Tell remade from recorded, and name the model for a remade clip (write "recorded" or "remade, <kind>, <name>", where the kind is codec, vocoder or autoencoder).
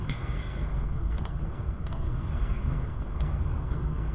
remade, codec, SNAC